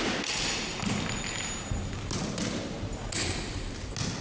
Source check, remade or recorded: recorded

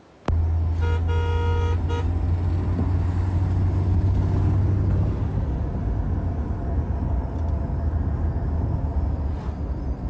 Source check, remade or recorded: recorded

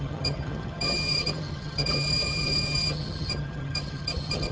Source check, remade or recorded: remade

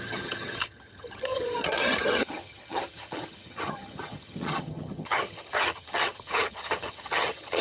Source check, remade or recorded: remade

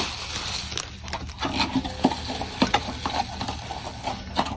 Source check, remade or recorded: recorded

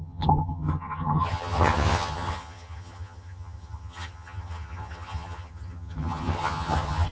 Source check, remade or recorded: remade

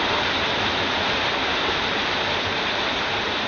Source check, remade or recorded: recorded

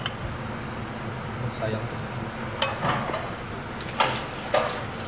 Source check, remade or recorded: recorded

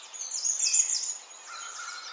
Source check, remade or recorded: recorded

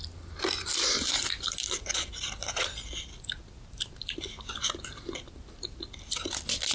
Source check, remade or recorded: recorded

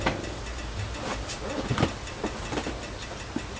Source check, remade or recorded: recorded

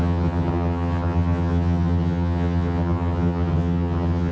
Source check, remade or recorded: remade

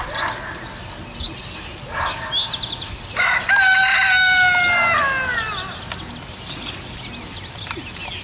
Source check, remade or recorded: recorded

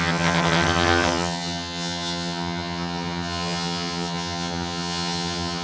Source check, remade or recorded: remade